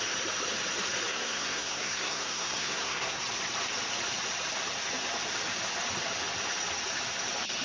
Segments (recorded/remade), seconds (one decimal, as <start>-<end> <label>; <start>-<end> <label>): 0.0-1.1 recorded; 1.1-3.2 remade; 3.2-7.6 recorded